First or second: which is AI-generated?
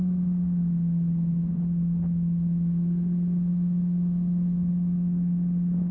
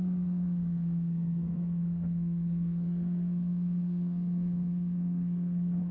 second